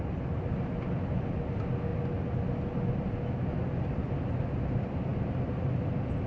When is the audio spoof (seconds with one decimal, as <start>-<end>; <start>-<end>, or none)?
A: none